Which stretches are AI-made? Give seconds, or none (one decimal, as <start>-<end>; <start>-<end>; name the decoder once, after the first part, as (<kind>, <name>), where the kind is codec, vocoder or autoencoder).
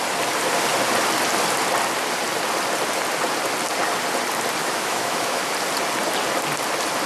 4.6-5.5 (autoencoder, DAC-VAE)